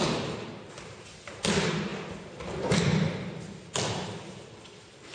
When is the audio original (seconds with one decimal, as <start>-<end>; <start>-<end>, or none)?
0.0-5.1